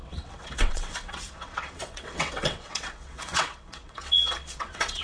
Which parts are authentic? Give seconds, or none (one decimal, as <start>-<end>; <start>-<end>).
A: none